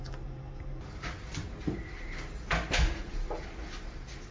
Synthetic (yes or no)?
no